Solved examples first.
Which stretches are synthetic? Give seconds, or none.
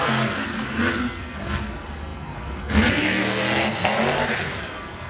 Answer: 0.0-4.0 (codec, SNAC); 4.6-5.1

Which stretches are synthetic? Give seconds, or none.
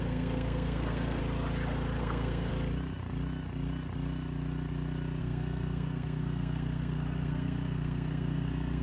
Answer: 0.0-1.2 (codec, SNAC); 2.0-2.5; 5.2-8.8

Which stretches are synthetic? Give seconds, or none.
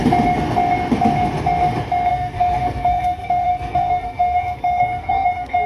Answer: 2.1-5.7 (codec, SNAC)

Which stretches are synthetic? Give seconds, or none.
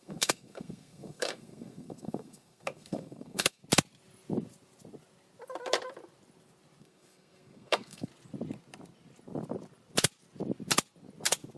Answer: 0.0-3.6 (codec, SNAC); 6.8-8.1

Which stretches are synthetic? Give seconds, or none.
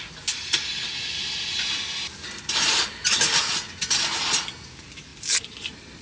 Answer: none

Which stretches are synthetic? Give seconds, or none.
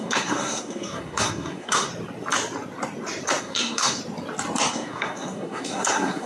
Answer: 0.0-1.9 (codec, SNAC); 3.4-4.0; 4.7-6.3